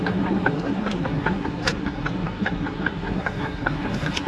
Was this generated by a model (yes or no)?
yes